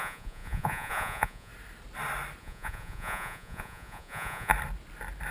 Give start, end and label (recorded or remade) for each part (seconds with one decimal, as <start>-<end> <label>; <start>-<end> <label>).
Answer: 0.0-1.5 remade; 1.5-2.4 recorded; 2.4-4.5 remade; 4.5-5.3 recorded